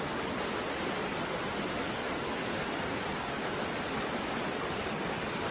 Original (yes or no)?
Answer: yes